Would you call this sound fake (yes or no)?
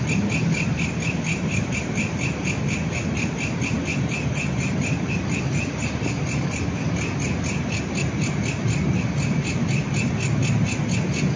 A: no